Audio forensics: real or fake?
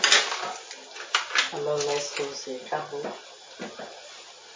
real